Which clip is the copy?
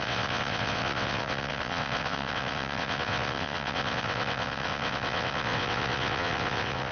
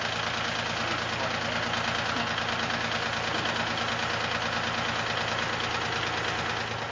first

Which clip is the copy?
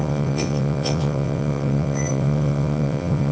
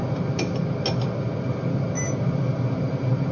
first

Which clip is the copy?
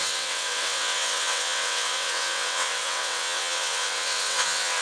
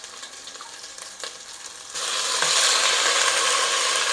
first